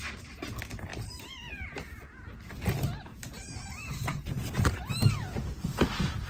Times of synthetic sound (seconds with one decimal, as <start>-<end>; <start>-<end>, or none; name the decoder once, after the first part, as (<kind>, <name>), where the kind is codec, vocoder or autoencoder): 3.1-4.9 (vocoder, BigVGAN v2)